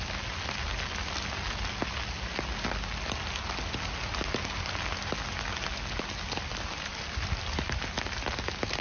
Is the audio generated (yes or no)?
no